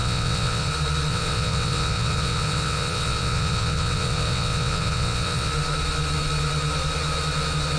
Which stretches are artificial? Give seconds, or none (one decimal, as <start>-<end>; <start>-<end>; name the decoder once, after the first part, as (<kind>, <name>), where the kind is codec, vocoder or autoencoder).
0.0-0.7 (vocoder, WaveNeXt); 1.1-5.5